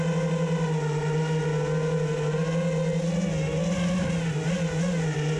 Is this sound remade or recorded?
recorded